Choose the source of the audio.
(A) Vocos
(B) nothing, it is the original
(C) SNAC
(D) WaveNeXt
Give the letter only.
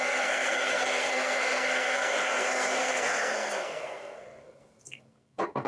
C